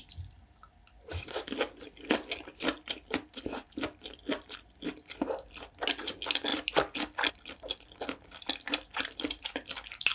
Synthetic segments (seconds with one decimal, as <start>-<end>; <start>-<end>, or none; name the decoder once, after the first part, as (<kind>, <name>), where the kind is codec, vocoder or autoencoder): none